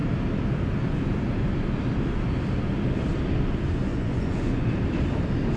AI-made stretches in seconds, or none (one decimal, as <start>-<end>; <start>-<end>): 3.9-4.7